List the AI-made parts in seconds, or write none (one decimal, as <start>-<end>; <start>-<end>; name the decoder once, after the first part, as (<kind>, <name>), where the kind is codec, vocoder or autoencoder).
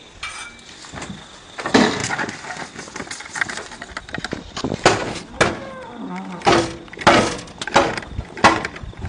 none